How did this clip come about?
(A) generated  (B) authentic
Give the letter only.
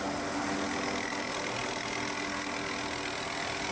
B